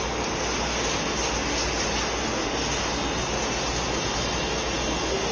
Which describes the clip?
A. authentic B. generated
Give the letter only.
A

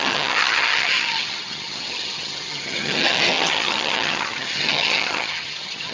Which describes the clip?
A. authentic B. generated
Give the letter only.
B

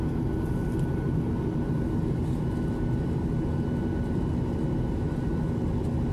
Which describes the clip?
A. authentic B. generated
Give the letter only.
A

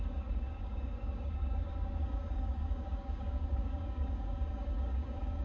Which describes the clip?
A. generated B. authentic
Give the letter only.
A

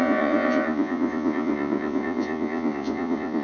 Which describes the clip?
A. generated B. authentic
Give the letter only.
A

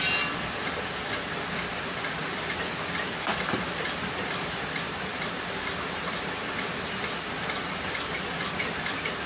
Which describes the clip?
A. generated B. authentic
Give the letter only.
B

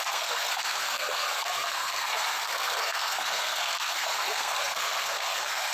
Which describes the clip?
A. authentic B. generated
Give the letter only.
B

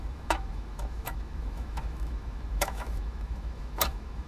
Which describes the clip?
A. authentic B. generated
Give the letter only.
B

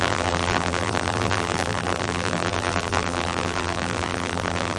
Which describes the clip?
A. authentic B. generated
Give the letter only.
B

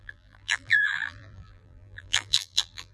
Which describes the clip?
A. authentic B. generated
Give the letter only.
B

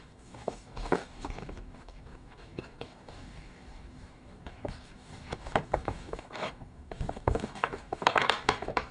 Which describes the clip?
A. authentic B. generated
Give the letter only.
B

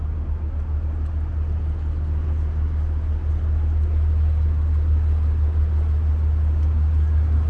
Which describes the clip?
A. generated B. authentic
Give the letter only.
B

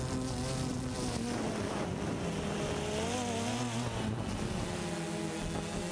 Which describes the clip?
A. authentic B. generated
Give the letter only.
A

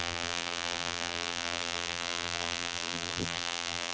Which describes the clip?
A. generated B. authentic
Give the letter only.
A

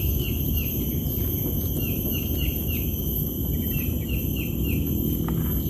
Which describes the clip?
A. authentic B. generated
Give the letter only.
A